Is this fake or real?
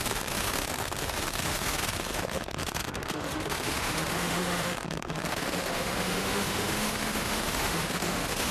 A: fake